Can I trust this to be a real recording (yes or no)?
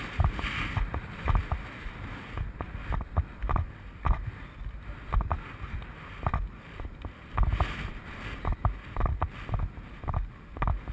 yes